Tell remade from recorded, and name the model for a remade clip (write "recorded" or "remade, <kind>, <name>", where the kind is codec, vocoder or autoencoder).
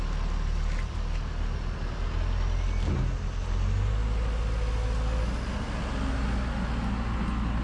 recorded